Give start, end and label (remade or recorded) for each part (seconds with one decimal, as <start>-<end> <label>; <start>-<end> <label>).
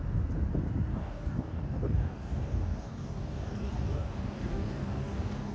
0.0-0.9 recorded; 0.9-5.5 remade